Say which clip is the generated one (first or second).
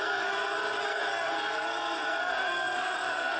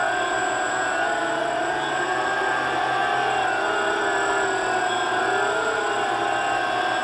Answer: first